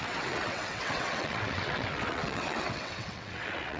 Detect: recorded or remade remade